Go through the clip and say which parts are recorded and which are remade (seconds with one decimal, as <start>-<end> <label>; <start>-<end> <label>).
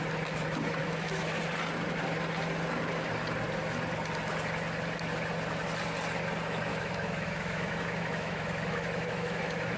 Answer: 0.0-0.8 recorded; 0.8-1.4 remade; 1.4-6.7 recorded; 6.7-9.8 remade